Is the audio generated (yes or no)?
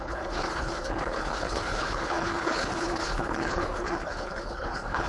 yes